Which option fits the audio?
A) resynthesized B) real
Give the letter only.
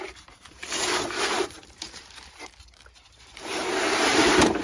A